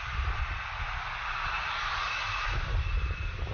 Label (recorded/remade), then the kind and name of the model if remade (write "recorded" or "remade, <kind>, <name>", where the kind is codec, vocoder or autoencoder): remade, vocoder, BigVGAN v2